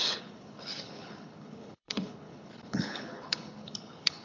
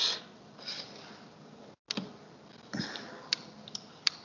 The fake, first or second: first